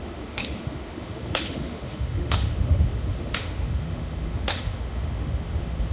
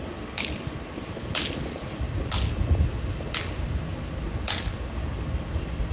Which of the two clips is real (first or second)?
second